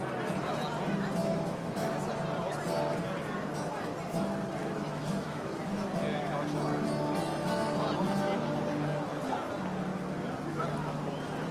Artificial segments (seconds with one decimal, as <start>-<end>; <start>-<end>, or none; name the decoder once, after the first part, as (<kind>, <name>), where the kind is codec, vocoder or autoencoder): 1.2-1.9 (autoencoder, DAC-VAE); 4.6-5.8